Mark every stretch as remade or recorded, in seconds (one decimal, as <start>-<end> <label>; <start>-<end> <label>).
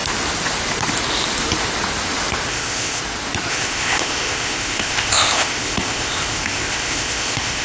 0.0-2.5 recorded; 2.5-3.0 remade; 3.0-3.5 recorded; 3.5-7.6 remade